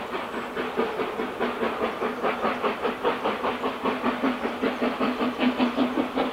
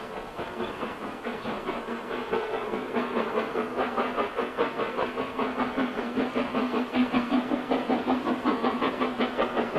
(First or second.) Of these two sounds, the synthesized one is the second